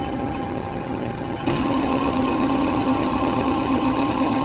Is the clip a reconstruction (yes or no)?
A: yes